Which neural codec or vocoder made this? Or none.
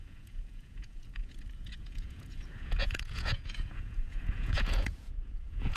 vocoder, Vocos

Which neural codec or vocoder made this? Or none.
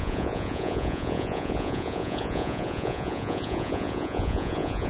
vocoder, Vocos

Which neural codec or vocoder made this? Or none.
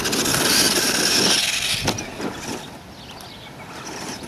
none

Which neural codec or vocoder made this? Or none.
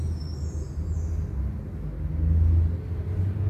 none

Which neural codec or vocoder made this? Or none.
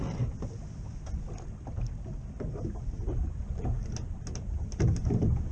none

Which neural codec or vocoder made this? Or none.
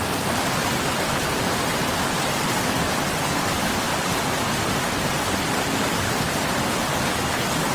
none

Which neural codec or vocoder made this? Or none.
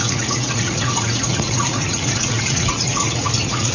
vocoder, Vocos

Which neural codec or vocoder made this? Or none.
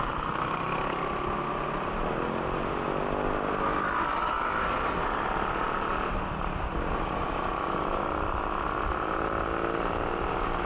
none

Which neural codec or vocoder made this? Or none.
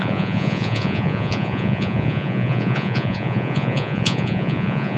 vocoder, Vocos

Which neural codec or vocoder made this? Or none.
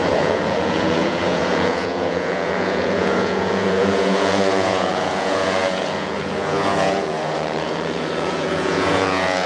vocoder, Vocos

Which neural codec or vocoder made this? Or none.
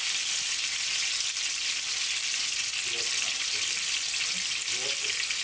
none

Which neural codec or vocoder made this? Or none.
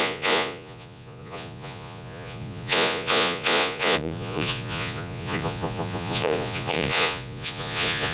vocoder, Vocos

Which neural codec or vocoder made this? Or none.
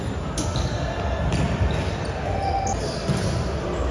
none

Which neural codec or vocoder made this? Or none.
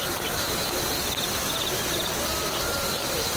none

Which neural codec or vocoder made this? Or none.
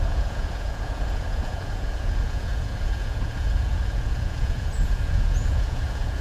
vocoder, Vocos